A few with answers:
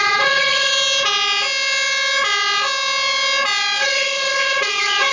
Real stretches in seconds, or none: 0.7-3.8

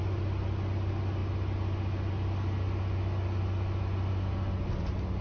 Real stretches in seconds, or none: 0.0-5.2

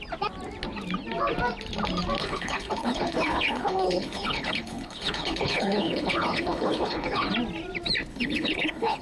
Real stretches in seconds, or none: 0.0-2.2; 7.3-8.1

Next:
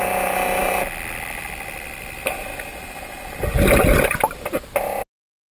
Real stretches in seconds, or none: 0.0-5.5

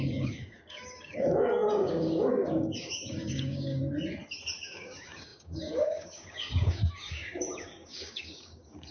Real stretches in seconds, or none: 3.8-4.6